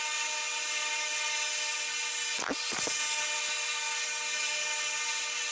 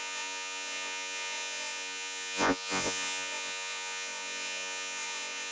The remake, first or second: second